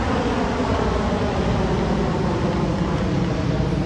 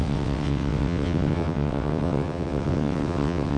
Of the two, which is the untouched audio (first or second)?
first